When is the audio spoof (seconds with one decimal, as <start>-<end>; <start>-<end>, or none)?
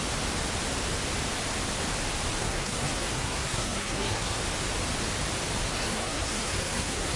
2.4-4.4; 5.7-7.2